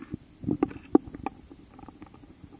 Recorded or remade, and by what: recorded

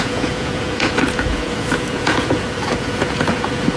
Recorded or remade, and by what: remade, vocoder, Vocos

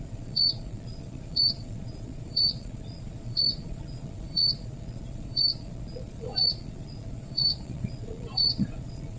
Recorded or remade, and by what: remade, vocoder, Vocos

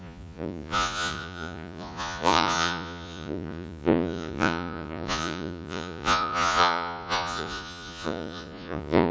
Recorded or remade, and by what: remade, vocoder, Vocos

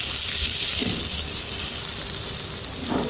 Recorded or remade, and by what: recorded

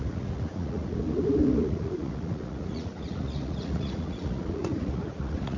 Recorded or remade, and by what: remade, vocoder, Vocos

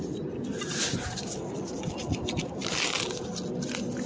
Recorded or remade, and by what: recorded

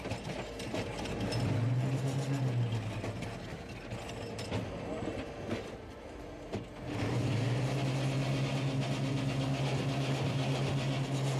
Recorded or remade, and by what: recorded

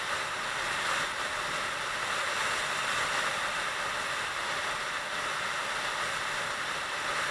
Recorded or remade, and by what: recorded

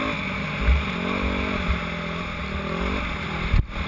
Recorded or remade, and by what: recorded